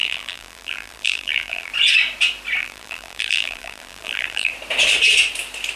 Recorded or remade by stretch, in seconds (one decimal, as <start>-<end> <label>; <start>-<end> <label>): 0.0-1.7 remade; 1.7-2.6 recorded; 2.6-4.5 remade; 4.5-5.8 recorded